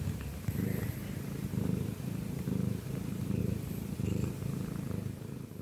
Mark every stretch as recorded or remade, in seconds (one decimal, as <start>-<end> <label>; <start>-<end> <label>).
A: 0.0-1.0 recorded; 1.0-3.4 remade; 3.4-5.6 recorded